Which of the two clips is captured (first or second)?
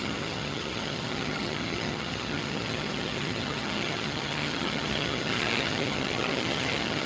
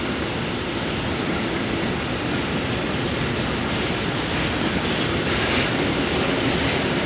second